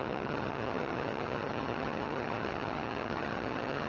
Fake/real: fake